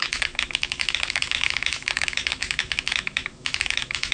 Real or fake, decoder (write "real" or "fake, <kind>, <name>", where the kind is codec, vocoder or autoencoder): fake, autoencoder, DAC-VAE